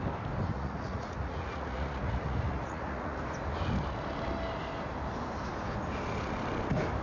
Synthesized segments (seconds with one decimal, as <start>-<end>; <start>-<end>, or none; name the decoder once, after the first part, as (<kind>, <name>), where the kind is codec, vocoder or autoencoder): 0.5-3.2 (vocoder, Vocos)